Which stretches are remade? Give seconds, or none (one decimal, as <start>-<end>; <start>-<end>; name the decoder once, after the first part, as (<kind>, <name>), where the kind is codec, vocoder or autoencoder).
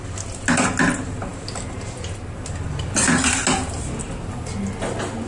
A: none